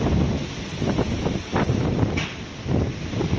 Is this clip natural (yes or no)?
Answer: yes